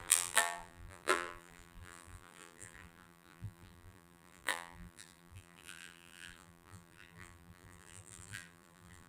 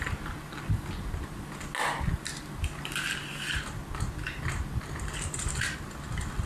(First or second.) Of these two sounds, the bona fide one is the second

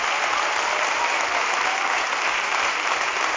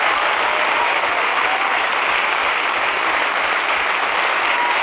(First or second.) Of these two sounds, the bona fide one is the second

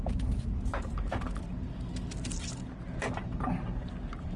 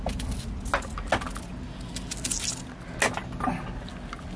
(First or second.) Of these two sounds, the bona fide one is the second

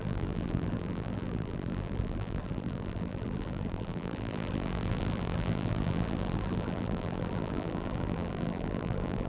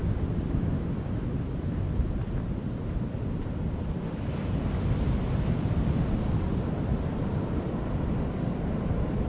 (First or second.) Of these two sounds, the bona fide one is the second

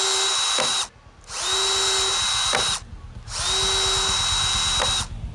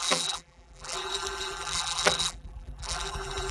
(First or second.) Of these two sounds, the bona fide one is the first